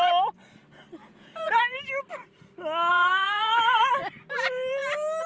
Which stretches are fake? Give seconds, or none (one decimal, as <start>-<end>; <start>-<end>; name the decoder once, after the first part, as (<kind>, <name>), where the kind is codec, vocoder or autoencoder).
1.0-1.6 (vocoder, Vocos); 2.9-3.9